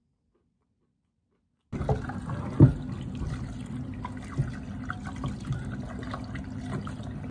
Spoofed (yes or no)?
no